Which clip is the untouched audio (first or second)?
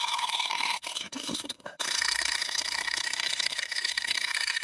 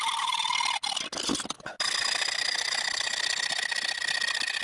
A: second